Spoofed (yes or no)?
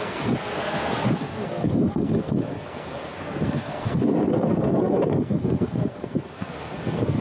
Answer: yes